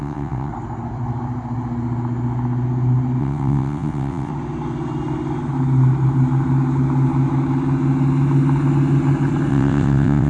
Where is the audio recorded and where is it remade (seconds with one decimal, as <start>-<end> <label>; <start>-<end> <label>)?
0.0-0.5 remade; 0.5-3.2 recorded; 3.2-4.3 remade; 4.3-9.5 recorded; 9.5-10.3 remade